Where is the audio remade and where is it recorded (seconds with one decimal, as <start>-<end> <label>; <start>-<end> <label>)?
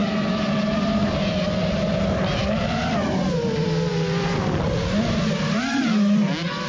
0.0-3.2 remade; 3.2-6.7 recorded